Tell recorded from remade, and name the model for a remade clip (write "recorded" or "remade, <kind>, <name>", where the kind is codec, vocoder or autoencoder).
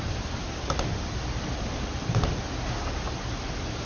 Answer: recorded